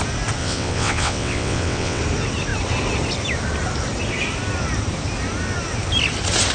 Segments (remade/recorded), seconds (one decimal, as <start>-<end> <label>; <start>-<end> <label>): 0.0-0.4 recorded; 0.4-2.0 remade; 2.0-6.5 recorded